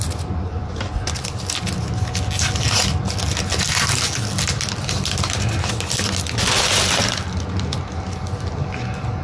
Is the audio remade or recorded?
recorded